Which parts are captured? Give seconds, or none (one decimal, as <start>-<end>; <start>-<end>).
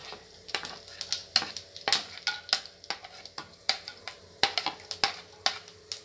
0.5-3.5; 4.2-6.0